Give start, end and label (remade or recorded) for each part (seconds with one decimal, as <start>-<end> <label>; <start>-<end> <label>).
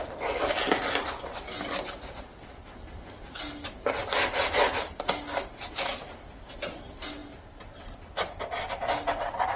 0.0-9.6 recorded